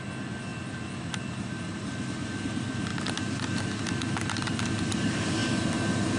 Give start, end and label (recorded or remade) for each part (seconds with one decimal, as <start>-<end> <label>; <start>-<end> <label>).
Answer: 0.0-6.2 recorded